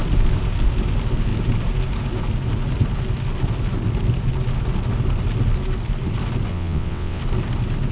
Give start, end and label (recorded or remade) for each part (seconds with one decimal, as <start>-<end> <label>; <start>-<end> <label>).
0.0-6.5 recorded; 6.5-7.2 remade; 7.2-7.9 recorded